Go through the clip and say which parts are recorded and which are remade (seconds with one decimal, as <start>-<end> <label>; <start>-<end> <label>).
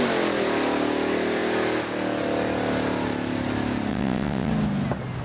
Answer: 0.0-3.9 recorded; 3.9-4.5 remade; 4.5-5.2 recorded